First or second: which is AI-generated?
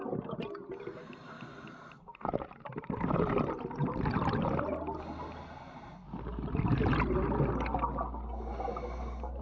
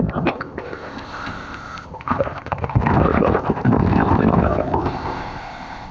second